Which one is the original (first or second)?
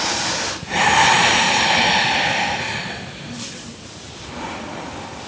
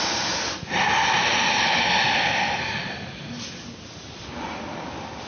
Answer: second